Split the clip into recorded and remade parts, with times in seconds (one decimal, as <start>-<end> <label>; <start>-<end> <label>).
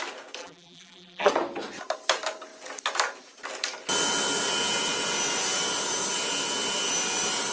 0.0-0.4 recorded; 0.4-1.3 remade; 1.3-7.5 recorded